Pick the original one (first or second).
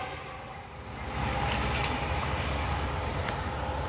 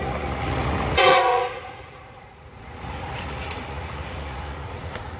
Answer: first